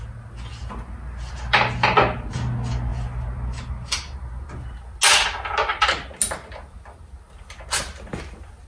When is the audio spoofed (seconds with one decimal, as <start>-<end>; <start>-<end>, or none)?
none